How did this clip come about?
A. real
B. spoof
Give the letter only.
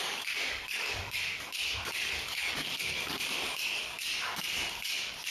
B